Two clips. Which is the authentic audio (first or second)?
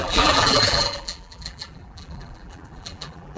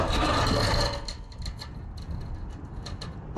second